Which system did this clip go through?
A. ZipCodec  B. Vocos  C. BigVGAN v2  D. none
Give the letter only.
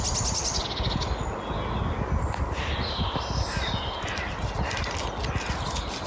D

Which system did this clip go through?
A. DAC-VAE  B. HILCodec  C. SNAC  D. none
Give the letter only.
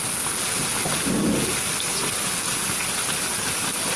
D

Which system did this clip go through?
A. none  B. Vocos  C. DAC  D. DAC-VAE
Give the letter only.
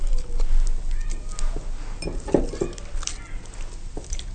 A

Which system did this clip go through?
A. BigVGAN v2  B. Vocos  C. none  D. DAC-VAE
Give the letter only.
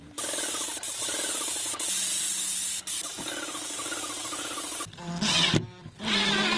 C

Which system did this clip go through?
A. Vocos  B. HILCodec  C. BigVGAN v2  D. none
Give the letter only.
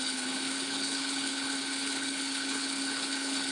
B